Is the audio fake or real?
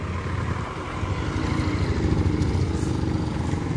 real